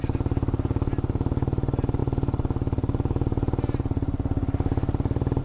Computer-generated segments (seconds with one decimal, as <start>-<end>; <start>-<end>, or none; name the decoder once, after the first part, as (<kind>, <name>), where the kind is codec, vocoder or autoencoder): none